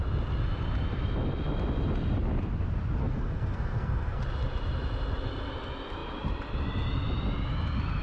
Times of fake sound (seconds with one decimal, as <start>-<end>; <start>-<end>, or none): 3.0-4.2